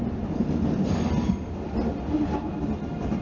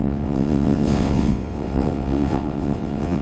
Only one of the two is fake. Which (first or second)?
second